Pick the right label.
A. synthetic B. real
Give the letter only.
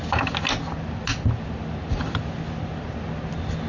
B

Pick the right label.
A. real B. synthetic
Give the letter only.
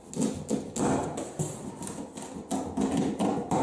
A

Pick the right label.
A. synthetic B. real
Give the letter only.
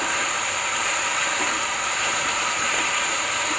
A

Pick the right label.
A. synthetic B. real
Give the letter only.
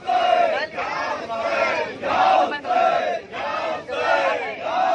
A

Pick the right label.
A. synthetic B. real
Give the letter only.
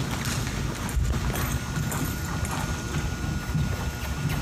B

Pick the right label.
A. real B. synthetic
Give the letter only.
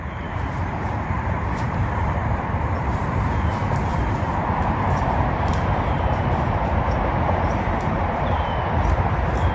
B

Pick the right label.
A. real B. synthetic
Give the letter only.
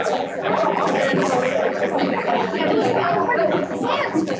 B